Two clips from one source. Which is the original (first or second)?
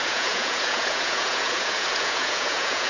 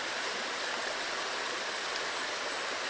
second